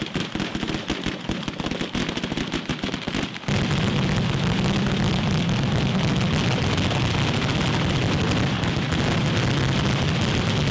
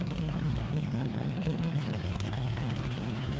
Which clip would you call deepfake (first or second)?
second